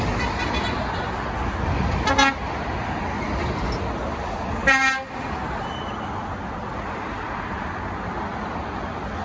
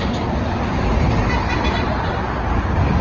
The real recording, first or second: first